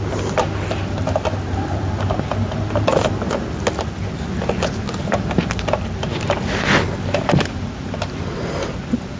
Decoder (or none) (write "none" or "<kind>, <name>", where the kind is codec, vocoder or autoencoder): none